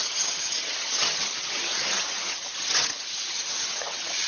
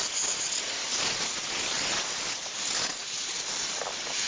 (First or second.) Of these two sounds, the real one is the second